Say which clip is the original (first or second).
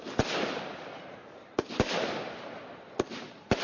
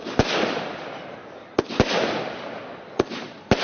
second